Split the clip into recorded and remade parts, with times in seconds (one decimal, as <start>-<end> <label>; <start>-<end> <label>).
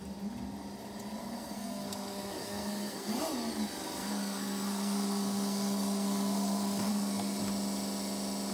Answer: 0.0-1.2 recorded; 1.2-3.2 remade; 3.2-4.0 recorded; 4.0-7.4 remade; 7.4-8.5 recorded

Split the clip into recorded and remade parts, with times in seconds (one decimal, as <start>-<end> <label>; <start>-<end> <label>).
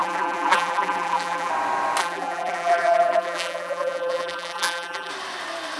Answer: 0.0-1.5 remade; 1.5-2.0 recorded; 2.0-5.1 remade; 5.1-5.8 recorded